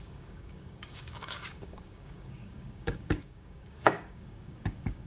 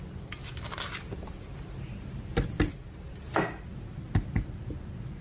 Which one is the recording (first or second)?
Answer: second